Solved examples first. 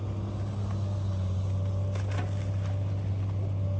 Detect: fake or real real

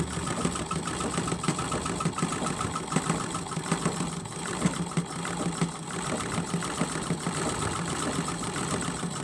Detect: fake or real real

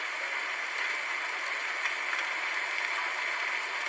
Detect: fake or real real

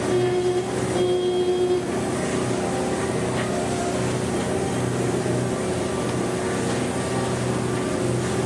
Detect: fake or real real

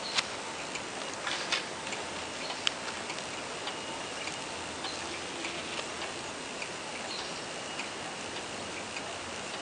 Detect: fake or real real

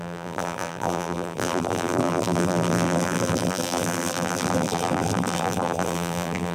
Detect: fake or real fake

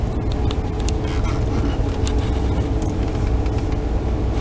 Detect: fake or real real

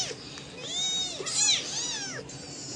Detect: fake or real real